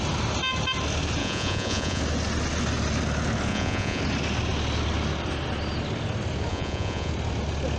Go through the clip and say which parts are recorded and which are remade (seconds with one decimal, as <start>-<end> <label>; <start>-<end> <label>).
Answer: 0.0-1.2 recorded; 1.2-2.0 remade; 2.0-3.5 recorded; 3.5-4.0 remade; 4.0-6.5 recorded; 6.5-7.1 remade; 7.1-7.8 recorded